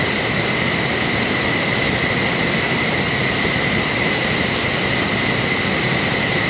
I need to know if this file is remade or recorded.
recorded